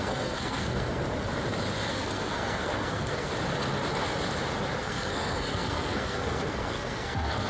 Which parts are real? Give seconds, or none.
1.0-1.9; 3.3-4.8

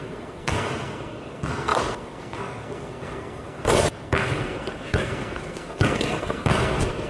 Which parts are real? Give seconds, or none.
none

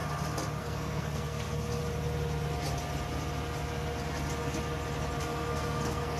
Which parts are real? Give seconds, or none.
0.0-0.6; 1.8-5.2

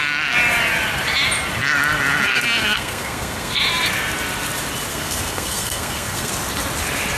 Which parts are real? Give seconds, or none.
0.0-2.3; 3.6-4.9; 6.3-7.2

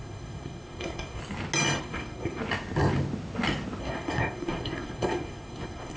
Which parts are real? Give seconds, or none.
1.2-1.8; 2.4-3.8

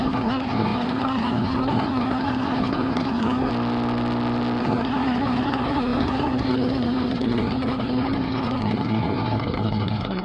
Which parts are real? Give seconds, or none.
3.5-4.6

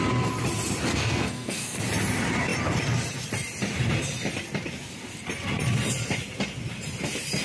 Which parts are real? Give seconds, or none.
0.0-0.9; 1.8-7.4

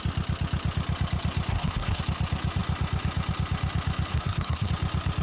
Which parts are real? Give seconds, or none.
0.0-1.5; 2.0-4.1; 4.7-5.2